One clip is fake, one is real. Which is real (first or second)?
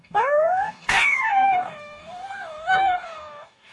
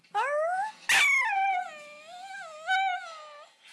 second